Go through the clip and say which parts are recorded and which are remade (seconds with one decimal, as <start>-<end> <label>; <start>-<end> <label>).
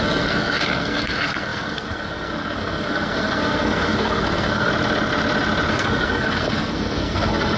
0.0-4.7 remade; 4.7-5.7 recorded; 5.7-7.6 remade